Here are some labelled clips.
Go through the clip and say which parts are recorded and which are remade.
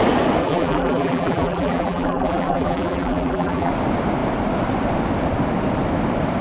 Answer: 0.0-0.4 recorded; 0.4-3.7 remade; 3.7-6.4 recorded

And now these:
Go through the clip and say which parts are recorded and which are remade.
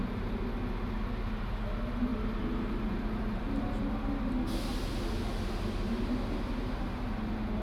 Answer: 0.0-7.6 recorded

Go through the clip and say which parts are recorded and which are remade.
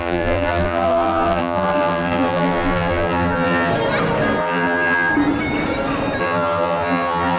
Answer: 0.0-3.7 remade; 3.7-4.4 recorded; 4.4-5.1 remade; 5.1-6.2 recorded; 6.2-7.4 remade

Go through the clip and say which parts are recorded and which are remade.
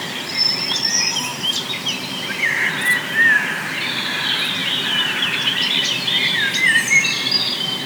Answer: 0.0-1.3 recorded; 1.3-2.7 remade; 2.7-4.6 recorded; 4.6-7.3 remade; 7.3-7.9 recorded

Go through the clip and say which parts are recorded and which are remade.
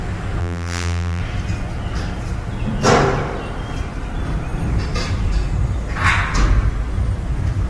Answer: 0.0-0.4 recorded; 0.4-1.2 remade; 1.2-7.7 recorded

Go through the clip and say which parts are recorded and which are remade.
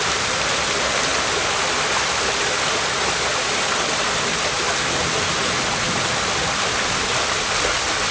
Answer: 0.0-8.1 recorded